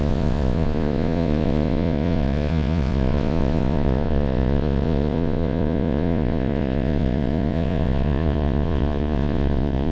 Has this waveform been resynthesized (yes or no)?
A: yes